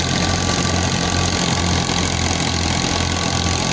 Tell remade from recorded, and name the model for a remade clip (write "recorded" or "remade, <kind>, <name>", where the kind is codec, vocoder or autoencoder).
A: recorded